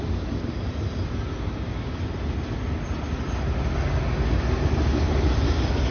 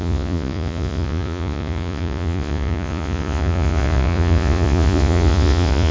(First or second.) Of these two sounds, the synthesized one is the second